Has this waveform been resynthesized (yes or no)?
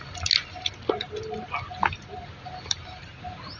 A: no